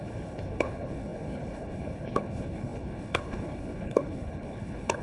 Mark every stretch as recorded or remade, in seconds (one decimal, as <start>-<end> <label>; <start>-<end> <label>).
0.0-5.0 remade